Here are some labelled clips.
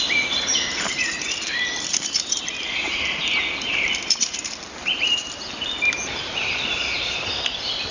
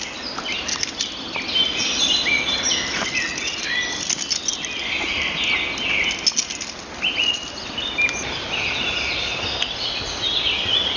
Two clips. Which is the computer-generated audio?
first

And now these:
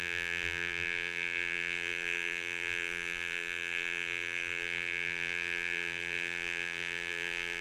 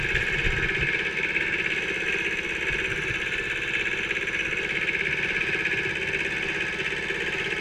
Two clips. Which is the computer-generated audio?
first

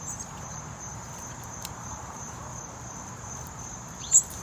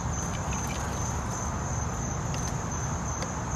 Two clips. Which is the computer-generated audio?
first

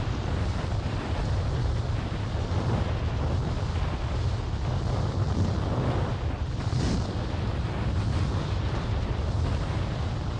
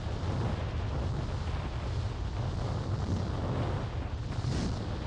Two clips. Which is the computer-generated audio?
first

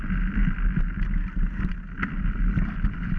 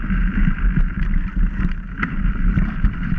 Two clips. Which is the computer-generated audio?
second